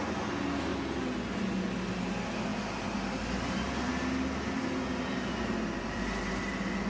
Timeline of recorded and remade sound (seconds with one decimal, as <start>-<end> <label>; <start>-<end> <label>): 0.0-6.9 recorded